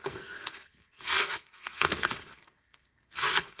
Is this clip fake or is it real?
fake